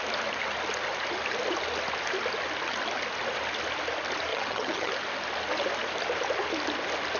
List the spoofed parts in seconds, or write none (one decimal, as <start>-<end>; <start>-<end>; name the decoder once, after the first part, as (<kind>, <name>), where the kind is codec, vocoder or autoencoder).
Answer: 4.3-4.9 (vocoder, HiFi-GAN)